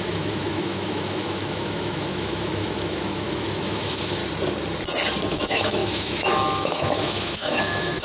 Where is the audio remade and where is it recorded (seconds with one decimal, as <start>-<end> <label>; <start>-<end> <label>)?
0.0-4.2 remade; 4.2-5.3 recorded; 5.3-8.0 remade